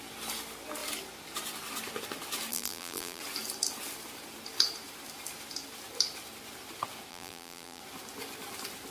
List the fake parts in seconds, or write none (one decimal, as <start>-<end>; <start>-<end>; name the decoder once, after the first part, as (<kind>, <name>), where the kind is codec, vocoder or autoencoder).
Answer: 2.5-3.2 (vocoder, BigVGAN v2); 7.1-7.8